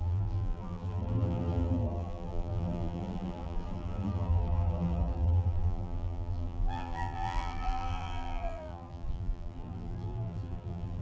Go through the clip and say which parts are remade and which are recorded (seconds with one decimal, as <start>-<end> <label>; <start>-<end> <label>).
0.0-11.0 remade